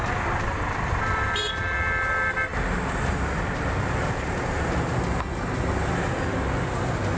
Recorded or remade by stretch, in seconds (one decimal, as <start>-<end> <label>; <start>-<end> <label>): 0.0-7.2 recorded